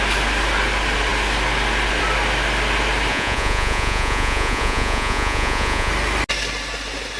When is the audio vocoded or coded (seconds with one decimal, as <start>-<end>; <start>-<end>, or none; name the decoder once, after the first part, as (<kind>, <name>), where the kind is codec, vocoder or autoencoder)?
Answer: 3.1-5.9 (vocoder, Vocos)